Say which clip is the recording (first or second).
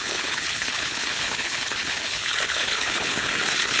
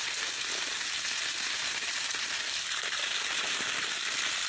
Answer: second